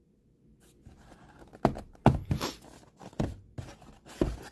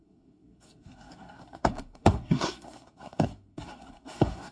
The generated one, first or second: second